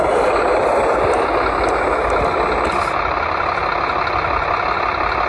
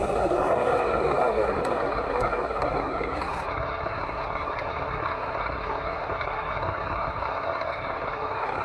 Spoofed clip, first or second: second